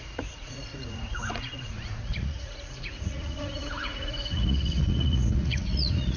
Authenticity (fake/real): fake